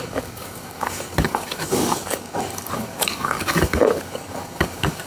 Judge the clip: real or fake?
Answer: fake